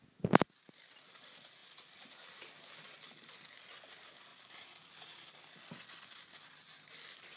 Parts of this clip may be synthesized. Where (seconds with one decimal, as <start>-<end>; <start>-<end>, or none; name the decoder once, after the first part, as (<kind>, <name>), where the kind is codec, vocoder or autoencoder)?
none